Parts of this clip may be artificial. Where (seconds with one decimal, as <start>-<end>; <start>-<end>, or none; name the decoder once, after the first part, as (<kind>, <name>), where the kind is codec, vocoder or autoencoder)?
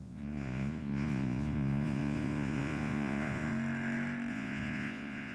0.0-3.5 (vocoder, Vocos); 4.3-5.3